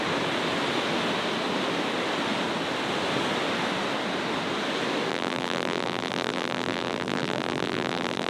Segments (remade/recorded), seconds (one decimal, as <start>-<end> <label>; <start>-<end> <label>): 0.0-5.1 recorded; 5.1-8.3 remade